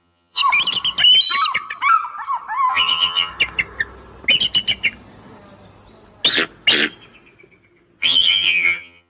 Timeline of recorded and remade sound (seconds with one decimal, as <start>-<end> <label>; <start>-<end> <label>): 0.0-0.4 remade; 0.4-2.7 recorded; 2.7-3.3 remade; 3.3-8.0 recorded; 8.0-9.1 remade